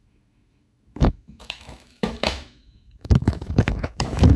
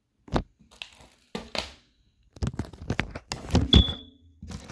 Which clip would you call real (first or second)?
second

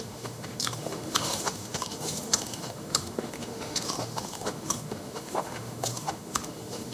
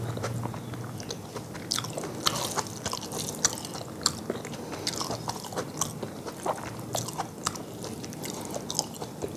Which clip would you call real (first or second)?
second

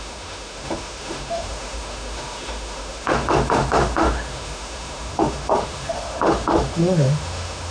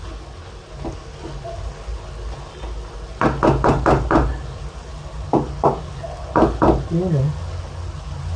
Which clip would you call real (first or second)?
second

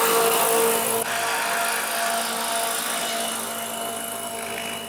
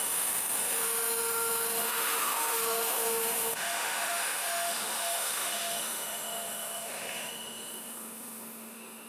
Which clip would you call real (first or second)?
first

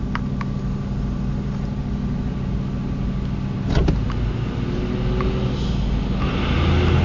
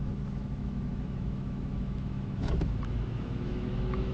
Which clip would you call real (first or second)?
first